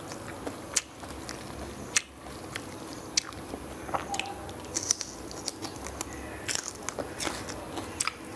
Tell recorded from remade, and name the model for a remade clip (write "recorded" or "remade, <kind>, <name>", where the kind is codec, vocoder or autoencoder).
recorded